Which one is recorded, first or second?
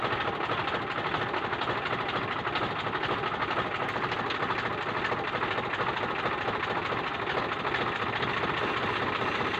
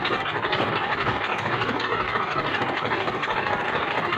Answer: first